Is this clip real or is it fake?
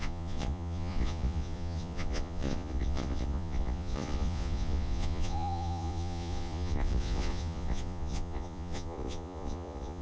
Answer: fake